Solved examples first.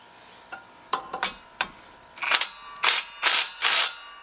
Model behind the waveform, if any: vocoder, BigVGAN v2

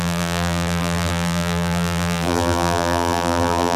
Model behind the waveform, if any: vocoder, BigVGAN v2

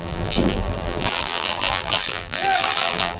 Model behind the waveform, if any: vocoder, BigVGAN v2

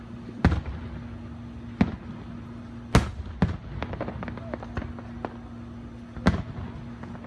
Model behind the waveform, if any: none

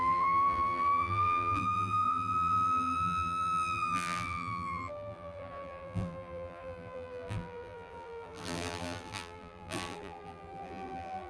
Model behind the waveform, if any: vocoder, BigVGAN v2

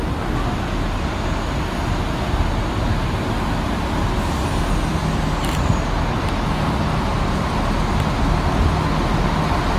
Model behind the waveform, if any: none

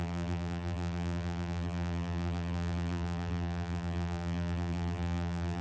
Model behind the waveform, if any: vocoder, BigVGAN v2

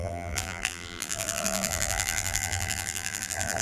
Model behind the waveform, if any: vocoder, BigVGAN v2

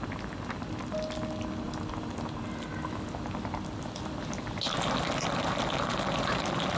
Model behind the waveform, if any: none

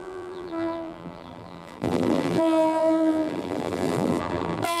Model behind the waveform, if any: vocoder, BigVGAN v2